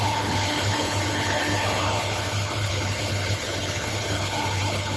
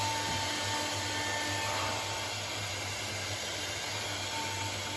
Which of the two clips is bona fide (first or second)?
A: second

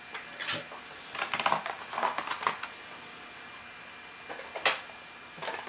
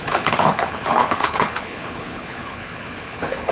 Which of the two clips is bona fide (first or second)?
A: first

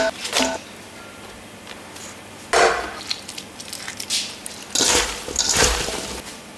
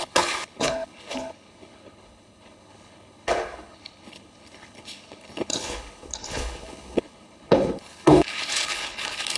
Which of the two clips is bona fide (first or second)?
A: first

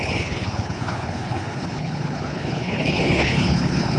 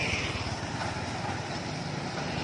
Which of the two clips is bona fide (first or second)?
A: second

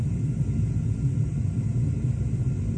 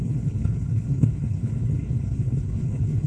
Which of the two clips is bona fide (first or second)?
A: first